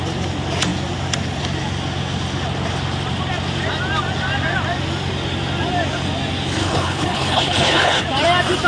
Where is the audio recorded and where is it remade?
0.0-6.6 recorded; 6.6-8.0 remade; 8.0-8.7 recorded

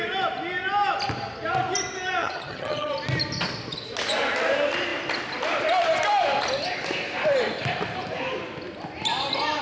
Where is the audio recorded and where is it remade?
0.0-2.2 recorded; 2.2-2.9 remade; 2.9-9.6 recorded

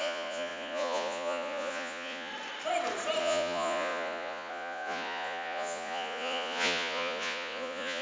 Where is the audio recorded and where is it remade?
0.0-2.3 remade; 2.3-3.2 recorded; 3.2-8.0 remade

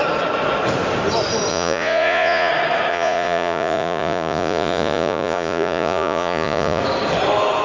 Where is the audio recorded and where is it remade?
0.0-1.5 recorded; 1.5-2.5 remade; 2.5-2.9 recorded; 2.9-6.8 remade; 6.8-7.6 recorded

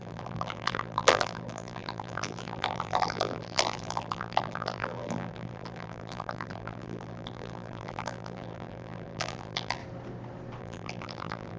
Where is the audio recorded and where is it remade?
0.0-9.8 remade; 9.8-10.6 recorded; 10.6-11.6 remade

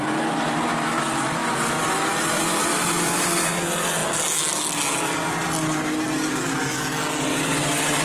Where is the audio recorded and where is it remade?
0.0-1.4 remade; 1.4-2.3 recorded; 2.3-4.0 remade; 4.0-7.2 recorded; 7.2-8.0 remade